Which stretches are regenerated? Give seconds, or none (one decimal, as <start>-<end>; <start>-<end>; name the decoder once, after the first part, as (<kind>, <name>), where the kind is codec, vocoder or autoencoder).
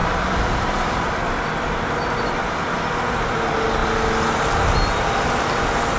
0.0-1.1 (vocoder, BigVGAN v2)